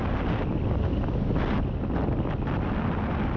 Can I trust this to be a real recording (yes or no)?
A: yes